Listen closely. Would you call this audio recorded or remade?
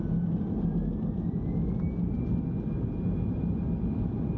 recorded